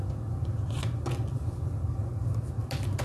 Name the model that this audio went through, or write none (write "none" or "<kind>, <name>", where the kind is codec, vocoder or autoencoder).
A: none